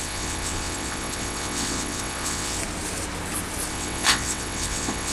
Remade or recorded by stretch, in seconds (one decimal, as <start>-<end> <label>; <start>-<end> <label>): 0.0-2.6 remade; 2.6-3.7 recorded; 3.7-5.1 remade